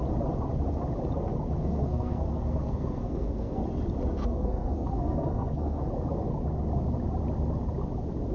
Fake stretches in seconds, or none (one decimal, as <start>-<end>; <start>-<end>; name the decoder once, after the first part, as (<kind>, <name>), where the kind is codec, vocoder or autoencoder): 1.6-3.6 (codec, SNAC); 4.2-5.9